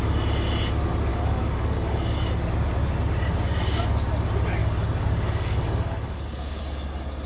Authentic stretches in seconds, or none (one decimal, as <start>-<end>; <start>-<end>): 0.0-1.1; 2.3-4.6; 6.6-7.3